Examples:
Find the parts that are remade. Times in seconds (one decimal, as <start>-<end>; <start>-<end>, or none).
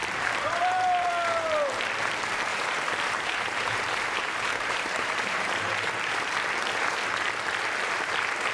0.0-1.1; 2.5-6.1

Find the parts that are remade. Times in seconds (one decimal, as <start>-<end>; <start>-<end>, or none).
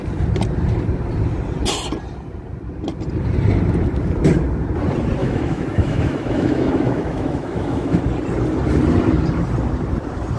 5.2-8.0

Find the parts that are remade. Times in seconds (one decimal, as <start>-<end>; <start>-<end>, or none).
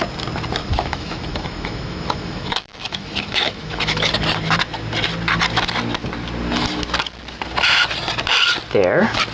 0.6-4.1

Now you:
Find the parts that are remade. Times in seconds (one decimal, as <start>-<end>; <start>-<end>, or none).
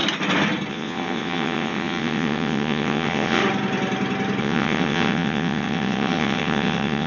0.7-3.4; 4.4-7.1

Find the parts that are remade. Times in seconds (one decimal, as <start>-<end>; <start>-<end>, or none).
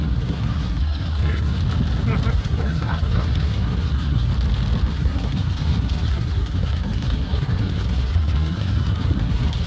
0.0-1.6; 2.3-4.3; 4.9-9.7